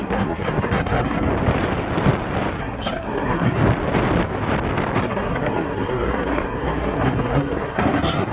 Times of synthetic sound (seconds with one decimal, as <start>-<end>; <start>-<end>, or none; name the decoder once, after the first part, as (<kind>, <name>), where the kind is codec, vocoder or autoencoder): 0.0-1.3 (codec, SNAC); 2.6-3.6; 5.0-8.3